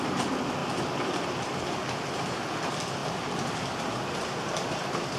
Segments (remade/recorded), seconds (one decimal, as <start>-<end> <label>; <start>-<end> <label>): 0.0-5.2 remade